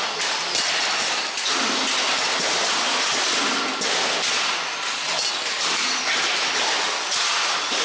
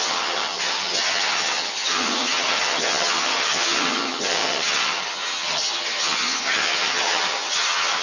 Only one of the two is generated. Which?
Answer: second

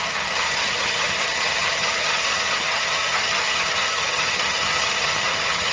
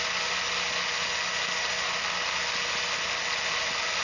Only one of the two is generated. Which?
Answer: first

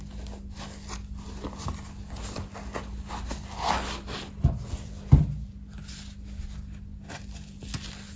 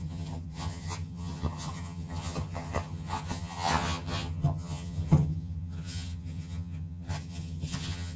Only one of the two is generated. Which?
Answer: second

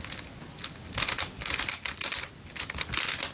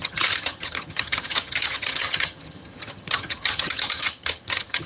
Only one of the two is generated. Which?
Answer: second